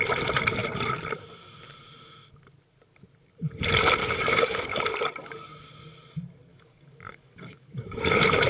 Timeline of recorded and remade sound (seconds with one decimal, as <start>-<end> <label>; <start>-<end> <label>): 0.0-4.0 recorded; 4.0-4.8 remade; 4.8-6.5 recorded; 6.5-8.1 remade; 8.1-8.5 recorded